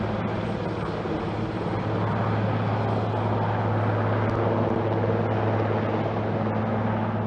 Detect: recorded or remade recorded